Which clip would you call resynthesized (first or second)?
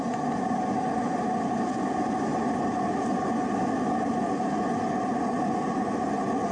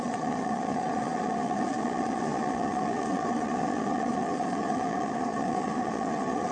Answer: second